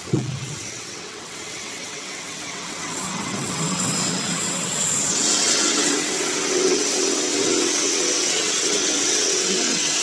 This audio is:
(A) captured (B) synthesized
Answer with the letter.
B